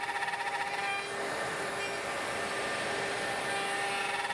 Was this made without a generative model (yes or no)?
yes